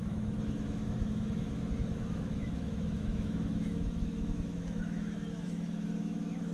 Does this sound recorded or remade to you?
remade